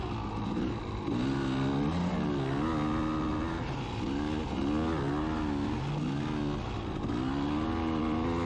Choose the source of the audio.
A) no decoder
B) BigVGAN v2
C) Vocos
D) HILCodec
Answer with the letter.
A